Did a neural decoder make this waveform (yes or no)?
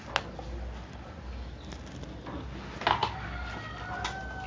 no